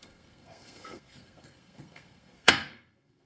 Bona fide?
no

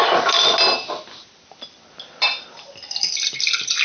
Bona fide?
yes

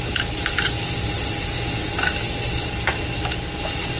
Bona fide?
yes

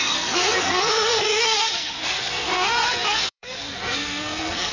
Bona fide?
no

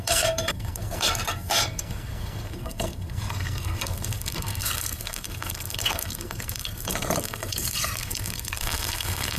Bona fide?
no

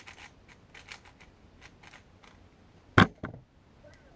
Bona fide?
yes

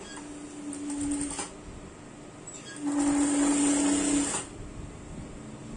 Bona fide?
yes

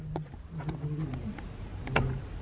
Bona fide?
yes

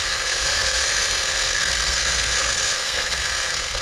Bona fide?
no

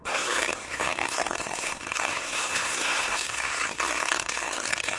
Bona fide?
no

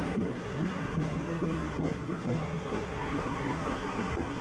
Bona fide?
no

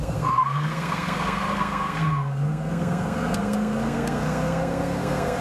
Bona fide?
no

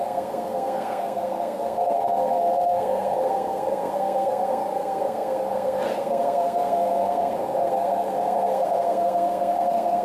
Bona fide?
no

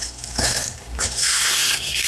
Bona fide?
no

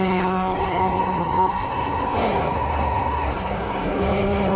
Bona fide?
no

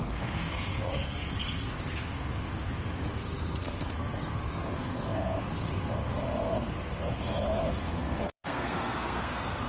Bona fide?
no